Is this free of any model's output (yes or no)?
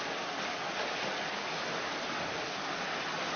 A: yes